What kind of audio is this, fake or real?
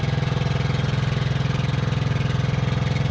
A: real